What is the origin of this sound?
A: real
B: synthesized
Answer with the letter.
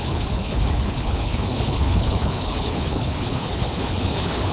B